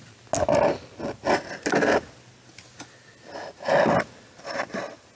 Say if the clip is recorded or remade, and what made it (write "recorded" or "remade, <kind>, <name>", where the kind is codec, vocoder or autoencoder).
recorded